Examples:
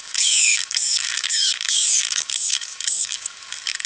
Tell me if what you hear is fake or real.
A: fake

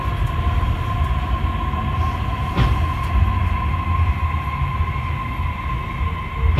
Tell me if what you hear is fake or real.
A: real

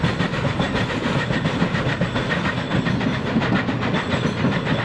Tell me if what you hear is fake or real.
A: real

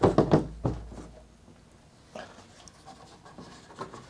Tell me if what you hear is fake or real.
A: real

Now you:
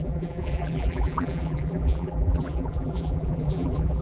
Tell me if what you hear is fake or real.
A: fake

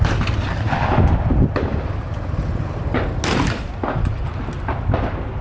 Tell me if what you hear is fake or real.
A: real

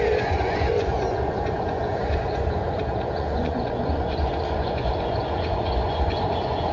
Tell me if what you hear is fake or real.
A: fake